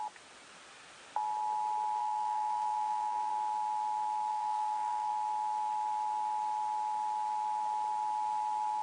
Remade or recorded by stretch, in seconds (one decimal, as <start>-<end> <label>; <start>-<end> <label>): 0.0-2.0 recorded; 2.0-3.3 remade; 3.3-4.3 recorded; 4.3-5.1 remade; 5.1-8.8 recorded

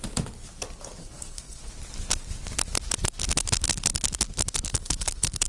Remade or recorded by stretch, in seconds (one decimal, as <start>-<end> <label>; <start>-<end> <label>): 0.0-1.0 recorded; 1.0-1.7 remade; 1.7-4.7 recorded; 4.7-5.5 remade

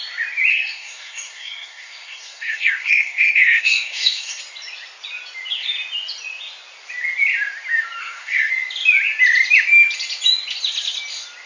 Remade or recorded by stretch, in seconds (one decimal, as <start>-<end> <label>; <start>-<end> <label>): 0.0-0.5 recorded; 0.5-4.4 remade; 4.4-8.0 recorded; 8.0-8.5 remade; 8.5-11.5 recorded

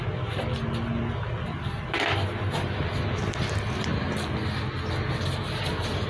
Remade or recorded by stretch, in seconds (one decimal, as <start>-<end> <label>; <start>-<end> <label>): 0.0-6.1 recorded

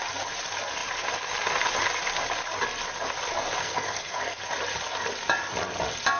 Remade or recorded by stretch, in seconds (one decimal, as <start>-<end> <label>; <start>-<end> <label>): 0.0-3.6 recorded; 3.6-4.4 remade; 4.4-6.2 recorded

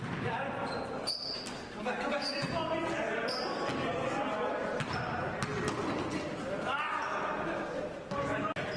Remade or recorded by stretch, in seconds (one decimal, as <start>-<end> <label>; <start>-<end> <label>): 0.0-8.8 recorded